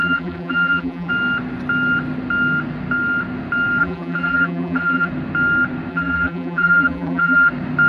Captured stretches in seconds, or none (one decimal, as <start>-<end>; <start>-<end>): 1.1-3.8; 5.1-5.9; 7.5-7.9